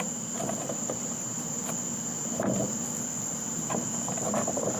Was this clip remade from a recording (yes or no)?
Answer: no